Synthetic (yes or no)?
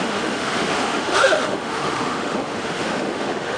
yes